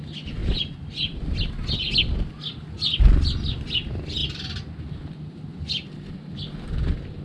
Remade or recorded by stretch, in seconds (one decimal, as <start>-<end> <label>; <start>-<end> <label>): 0.0-7.2 recorded